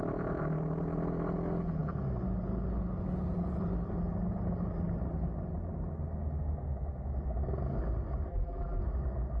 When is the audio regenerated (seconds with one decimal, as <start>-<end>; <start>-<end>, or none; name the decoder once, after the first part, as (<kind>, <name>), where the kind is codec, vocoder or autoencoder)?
8.3-8.8 (vocoder, BigVGAN v2)